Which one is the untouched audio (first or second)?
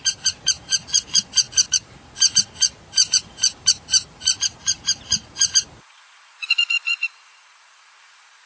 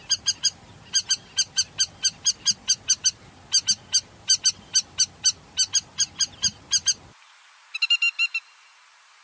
second